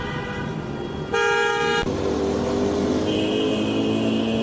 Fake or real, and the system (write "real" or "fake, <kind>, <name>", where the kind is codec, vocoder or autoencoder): real